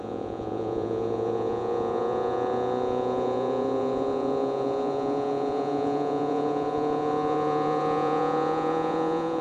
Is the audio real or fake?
fake